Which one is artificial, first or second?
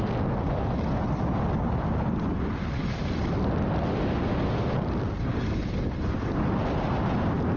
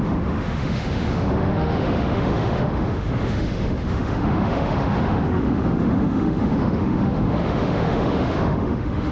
second